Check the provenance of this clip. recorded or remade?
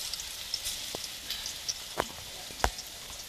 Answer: recorded